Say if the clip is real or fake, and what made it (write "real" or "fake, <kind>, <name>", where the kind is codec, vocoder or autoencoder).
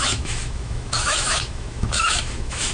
fake, autoencoder, DAC-VAE